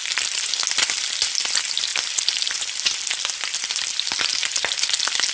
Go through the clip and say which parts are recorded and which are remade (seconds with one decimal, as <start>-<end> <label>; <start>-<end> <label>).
0.0-5.3 recorded